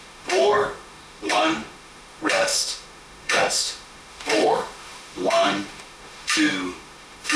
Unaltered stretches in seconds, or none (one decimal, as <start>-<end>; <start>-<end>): none